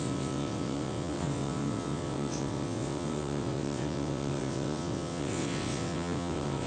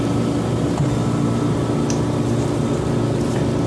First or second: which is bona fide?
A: second